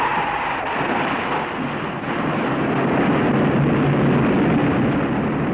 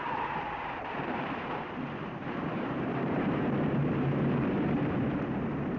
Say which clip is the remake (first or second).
second